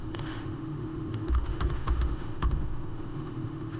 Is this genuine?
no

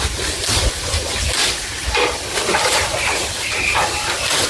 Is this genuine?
yes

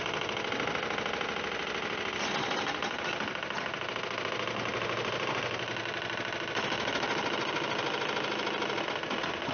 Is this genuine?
yes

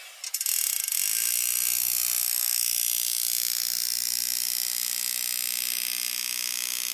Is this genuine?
yes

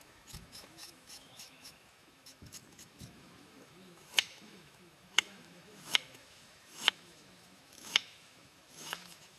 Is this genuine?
no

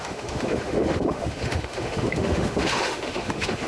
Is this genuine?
no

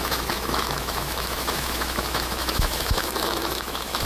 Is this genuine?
no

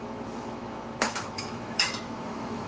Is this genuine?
no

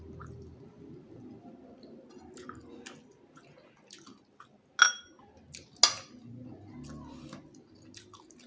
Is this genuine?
yes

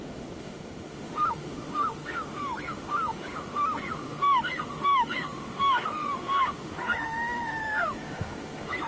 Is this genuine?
no